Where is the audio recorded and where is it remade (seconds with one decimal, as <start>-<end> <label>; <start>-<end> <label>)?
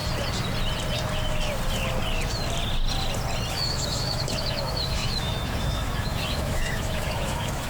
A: 0.0-3.5 recorded; 3.5-7.7 remade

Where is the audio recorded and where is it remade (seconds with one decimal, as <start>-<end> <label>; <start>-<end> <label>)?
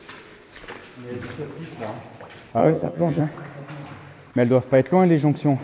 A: 0.0-2.6 recorded; 2.6-3.2 remade; 3.2-5.6 recorded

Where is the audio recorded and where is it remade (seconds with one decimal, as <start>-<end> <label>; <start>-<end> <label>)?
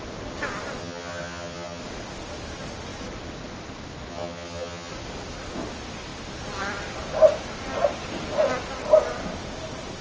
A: 0.0-0.8 recorded; 0.8-1.8 remade; 1.8-4.1 recorded; 4.1-4.9 remade; 4.9-10.0 recorded